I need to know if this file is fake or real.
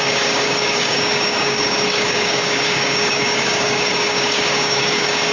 fake